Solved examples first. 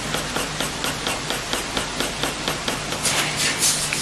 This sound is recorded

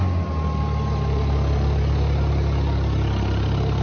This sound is recorded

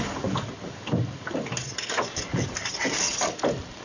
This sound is recorded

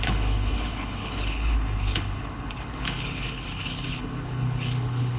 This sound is remade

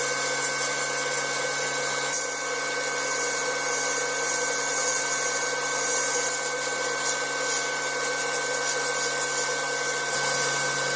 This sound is recorded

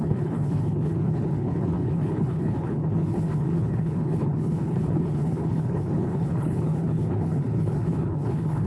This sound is remade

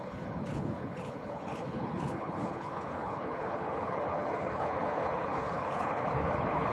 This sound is remade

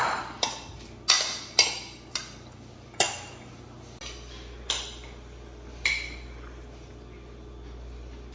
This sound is recorded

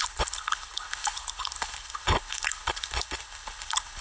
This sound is remade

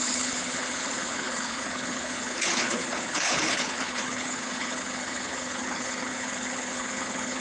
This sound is remade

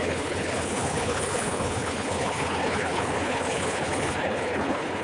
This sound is remade